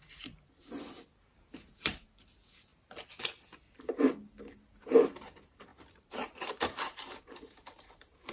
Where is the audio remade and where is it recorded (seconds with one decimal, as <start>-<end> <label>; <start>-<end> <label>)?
0.0-2.7 remade; 2.7-5.1 recorded; 5.1-8.3 remade